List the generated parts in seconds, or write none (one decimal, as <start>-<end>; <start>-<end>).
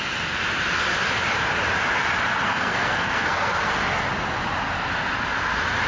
2.4-3.7